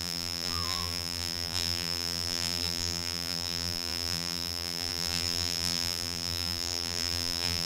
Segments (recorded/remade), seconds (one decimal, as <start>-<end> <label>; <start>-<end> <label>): 0.0-7.7 remade